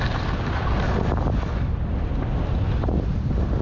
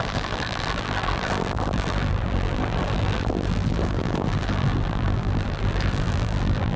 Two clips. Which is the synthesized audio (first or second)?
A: second